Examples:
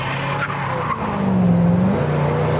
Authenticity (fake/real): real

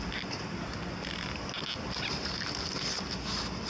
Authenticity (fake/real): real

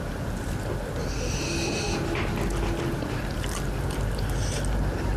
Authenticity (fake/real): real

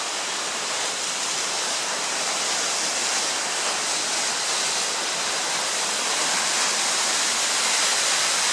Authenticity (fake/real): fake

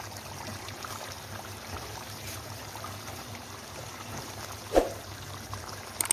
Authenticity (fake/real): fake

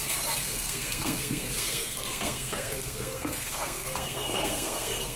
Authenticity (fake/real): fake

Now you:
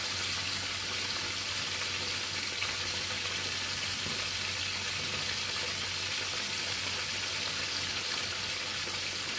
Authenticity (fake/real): real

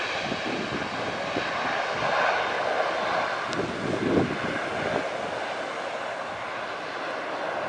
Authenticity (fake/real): real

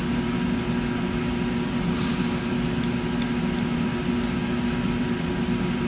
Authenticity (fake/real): real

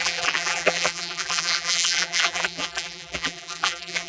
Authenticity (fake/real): fake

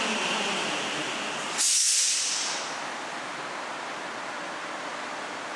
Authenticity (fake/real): real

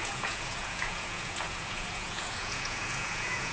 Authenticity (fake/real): fake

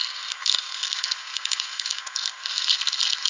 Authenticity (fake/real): fake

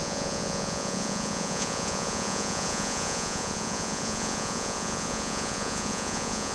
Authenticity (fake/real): fake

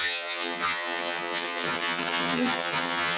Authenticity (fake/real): fake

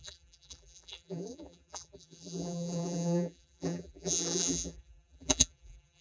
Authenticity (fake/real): fake